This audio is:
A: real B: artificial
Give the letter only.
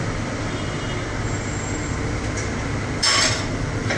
A